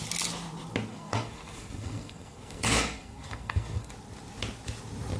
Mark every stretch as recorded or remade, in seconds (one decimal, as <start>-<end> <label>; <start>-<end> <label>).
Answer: 0.0-0.9 recorded; 0.9-3.9 remade; 3.9-5.2 recorded